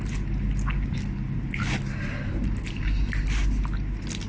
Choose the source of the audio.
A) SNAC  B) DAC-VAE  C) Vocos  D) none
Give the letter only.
D